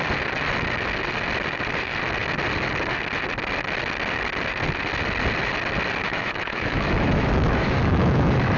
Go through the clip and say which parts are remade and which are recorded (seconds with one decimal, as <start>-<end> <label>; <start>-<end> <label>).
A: 0.0-6.0 recorded; 6.0-8.6 remade